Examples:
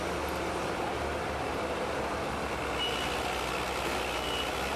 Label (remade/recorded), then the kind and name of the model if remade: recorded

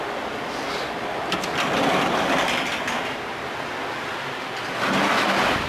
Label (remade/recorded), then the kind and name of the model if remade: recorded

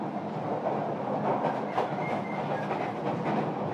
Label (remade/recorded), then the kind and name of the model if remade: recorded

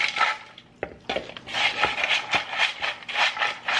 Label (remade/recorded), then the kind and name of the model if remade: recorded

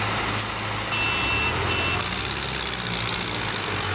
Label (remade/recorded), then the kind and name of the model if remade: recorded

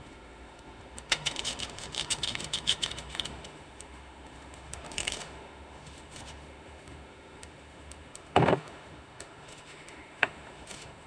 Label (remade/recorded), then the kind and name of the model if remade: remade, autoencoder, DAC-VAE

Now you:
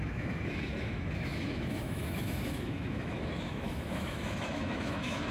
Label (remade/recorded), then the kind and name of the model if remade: remade, autoencoder, DAC-VAE